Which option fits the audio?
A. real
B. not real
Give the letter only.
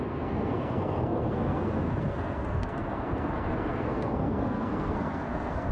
B